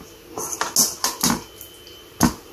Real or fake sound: real